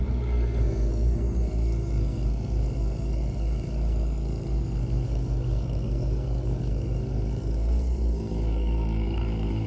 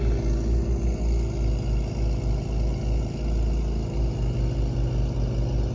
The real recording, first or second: second